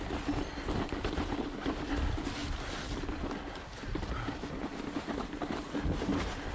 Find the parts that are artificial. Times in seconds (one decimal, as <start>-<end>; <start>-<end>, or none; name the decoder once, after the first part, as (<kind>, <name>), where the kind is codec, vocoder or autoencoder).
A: none